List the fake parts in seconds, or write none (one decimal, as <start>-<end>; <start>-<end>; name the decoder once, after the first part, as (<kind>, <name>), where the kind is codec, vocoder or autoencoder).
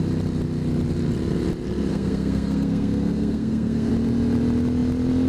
1.9-3.9 (codec, SNAC)